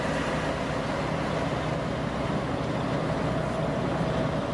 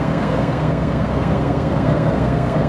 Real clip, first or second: first